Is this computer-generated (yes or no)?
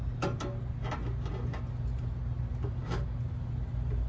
no